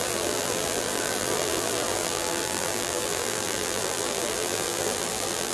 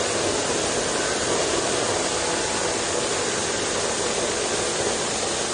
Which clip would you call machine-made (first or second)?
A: first